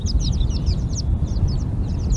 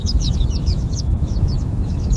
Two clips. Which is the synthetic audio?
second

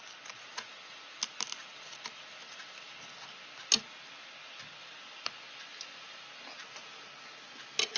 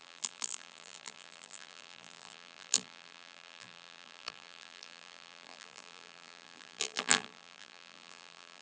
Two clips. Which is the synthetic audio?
second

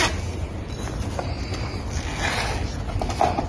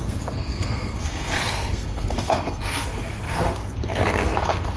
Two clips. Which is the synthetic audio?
second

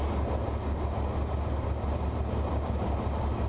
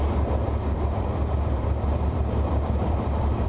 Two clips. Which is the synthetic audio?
second